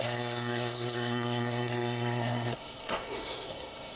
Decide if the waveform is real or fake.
fake